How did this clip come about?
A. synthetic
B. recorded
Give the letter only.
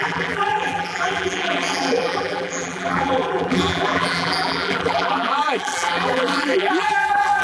A